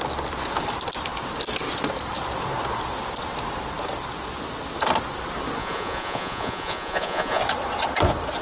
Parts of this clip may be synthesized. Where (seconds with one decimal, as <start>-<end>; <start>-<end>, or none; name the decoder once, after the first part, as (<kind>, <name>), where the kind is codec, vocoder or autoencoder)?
5.6-7.4 (vocoder, Vocos)